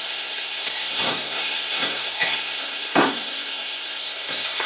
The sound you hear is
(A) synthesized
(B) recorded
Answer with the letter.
A